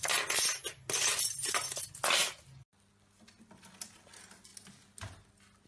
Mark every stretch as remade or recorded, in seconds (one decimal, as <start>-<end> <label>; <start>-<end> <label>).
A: 0.0-5.7 recorded